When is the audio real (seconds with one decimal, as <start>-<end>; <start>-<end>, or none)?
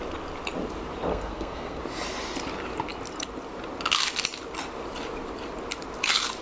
0.0-1.1; 1.8-6.4